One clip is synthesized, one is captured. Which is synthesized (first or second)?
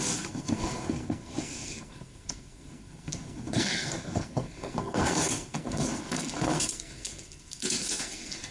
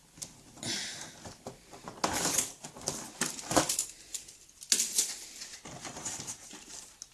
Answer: first